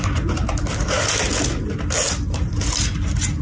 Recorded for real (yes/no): yes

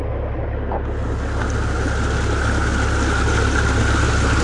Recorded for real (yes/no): yes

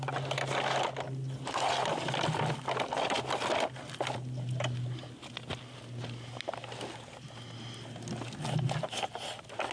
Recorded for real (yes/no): yes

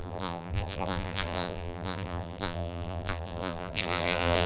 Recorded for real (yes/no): no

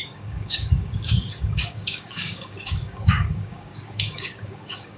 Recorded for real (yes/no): no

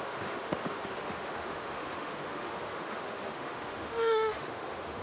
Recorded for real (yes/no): no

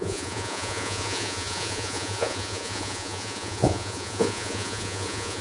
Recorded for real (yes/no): no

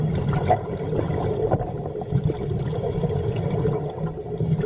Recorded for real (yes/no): yes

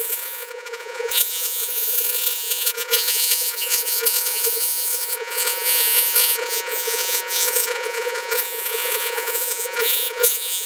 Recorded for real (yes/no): no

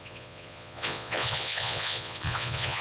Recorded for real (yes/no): no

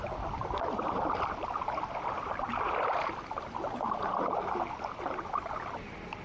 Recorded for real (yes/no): yes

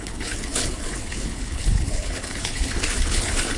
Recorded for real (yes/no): no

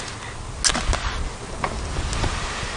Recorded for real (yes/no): yes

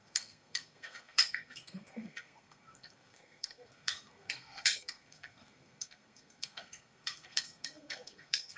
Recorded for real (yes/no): no